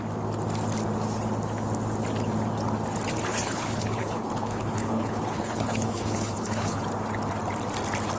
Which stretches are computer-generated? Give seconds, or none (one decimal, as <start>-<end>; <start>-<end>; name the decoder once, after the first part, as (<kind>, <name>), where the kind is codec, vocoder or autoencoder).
3.3-6.8 (codec, HILCodec)